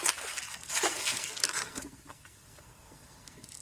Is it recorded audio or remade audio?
remade